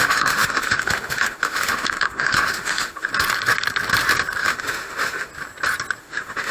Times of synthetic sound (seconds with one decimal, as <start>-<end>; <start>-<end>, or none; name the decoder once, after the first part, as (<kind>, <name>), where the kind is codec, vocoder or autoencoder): 0.0-3.1 (autoencoder, DAC-VAE); 4.4-5.3; 6.0-6.5